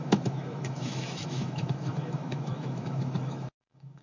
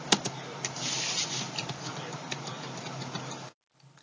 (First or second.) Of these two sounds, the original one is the second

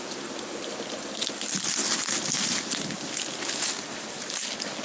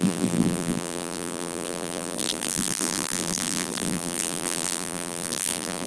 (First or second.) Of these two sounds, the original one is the first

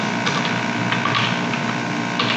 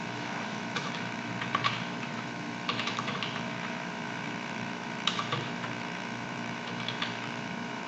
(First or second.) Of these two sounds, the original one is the first